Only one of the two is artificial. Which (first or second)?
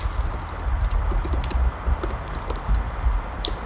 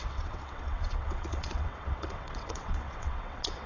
second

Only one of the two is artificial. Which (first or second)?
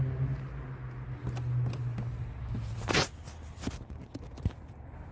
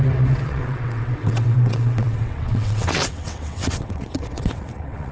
second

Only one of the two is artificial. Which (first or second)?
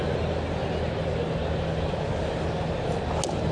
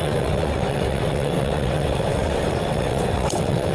second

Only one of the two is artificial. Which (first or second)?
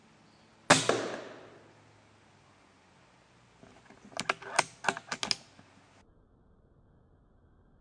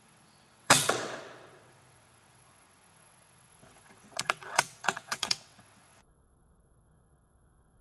second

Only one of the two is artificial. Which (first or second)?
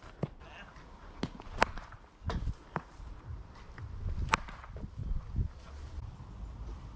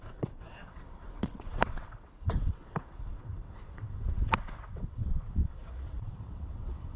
second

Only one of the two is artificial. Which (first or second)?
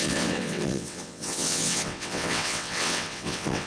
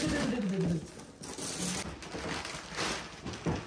first